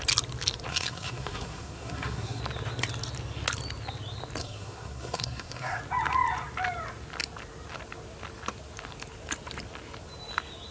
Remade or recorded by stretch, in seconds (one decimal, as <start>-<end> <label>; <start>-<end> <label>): 0.0-0.7 recorded; 0.7-2.4 remade; 2.4-4.4 recorded; 4.4-5.8 remade; 5.8-10.7 recorded